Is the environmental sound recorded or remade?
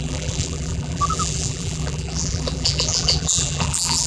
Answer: remade